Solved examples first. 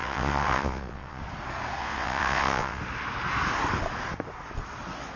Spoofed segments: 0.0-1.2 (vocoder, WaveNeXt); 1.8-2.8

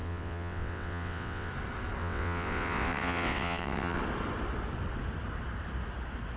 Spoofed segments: 0.0-1.5 (vocoder, WaveNeXt); 2.0-4.0